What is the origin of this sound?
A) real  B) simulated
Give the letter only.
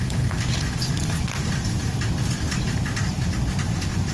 A